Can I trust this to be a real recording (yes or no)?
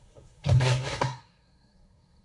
no